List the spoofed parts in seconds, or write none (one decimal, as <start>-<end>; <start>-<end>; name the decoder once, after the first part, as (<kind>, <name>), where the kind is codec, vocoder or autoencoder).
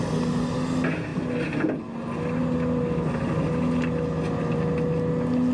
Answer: none